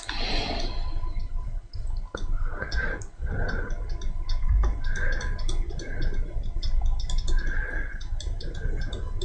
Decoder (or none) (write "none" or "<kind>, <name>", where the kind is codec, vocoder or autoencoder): none